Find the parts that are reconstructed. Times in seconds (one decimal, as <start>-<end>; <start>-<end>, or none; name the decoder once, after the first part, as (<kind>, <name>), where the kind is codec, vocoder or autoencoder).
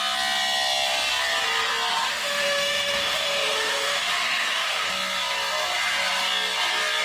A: 1.9-4.9 (autoencoder, DAC-VAE)